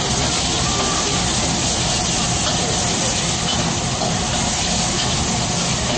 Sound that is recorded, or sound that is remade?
recorded